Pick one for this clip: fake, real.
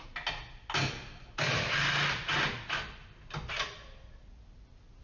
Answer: real